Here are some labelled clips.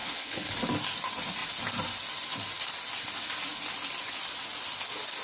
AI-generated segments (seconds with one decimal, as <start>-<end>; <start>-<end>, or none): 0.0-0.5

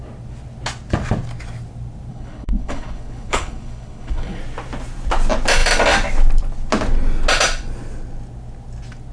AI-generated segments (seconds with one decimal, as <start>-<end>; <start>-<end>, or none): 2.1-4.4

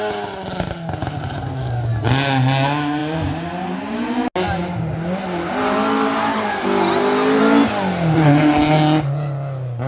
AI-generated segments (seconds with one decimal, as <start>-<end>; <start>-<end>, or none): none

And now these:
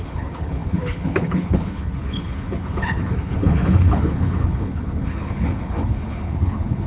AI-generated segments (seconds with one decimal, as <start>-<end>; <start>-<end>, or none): 0.0-6.9